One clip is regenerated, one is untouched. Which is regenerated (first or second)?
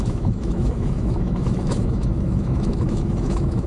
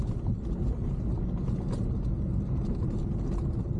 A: first